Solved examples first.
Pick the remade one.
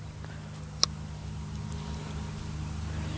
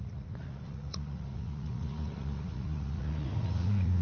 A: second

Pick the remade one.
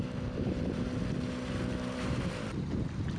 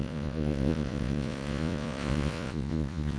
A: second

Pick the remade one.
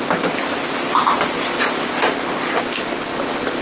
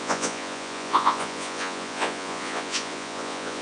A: second